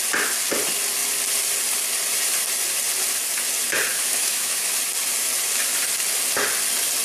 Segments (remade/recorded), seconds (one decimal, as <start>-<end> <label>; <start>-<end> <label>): 0.0-3.9 recorded; 3.9-4.7 remade; 4.7-7.0 recorded